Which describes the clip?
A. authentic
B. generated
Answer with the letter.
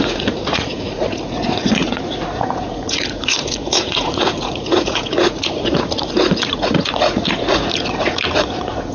B